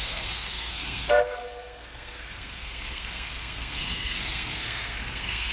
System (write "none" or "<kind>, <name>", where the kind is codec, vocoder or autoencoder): codec, SNAC